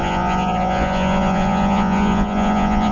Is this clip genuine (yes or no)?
no